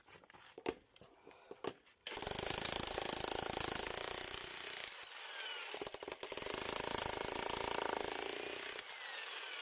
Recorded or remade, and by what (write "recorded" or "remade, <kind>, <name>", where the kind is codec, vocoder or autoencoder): recorded